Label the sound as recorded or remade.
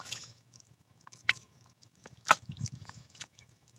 remade